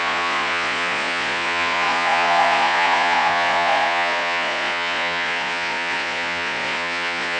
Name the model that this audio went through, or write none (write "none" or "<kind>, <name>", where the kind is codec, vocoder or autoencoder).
vocoder, Vocos